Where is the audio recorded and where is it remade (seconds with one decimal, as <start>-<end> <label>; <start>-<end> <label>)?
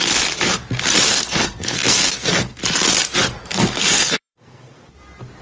0.0-1.1 recorded; 1.1-2.6 remade; 2.6-3.4 recorded; 3.4-4.8 remade; 4.8-5.4 recorded